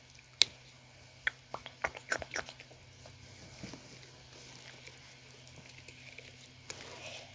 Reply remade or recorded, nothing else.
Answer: recorded